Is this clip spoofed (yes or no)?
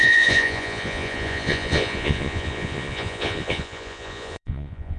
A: yes